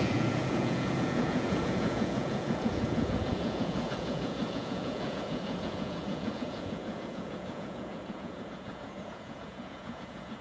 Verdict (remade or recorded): remade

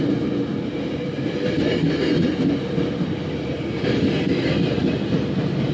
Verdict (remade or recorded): recorded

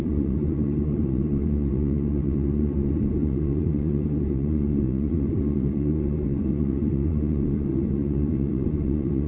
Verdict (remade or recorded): remade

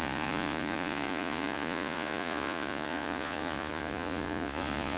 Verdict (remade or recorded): remade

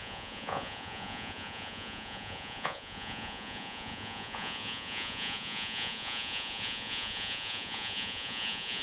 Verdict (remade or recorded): remade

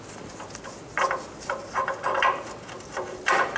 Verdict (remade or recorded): recorded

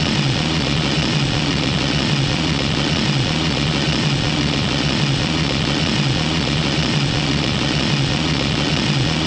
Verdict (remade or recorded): remade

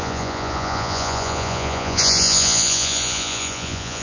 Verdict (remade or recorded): remade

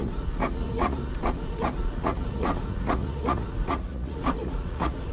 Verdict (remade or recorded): remade